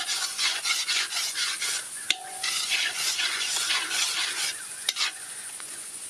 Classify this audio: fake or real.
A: fake